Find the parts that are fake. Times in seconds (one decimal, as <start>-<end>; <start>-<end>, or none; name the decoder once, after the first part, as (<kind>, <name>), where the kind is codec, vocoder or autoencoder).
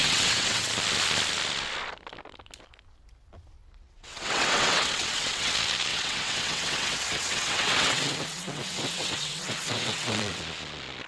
0.0-0.7 (vocoder, WaveNeXt); 3.6-5.5; 5.9-10.4